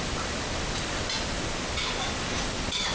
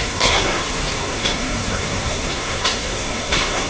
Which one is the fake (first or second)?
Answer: second